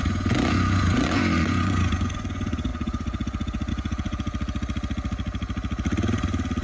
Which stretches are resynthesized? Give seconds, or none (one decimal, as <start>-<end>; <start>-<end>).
0.0-4.3